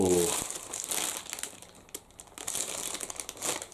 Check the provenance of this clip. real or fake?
real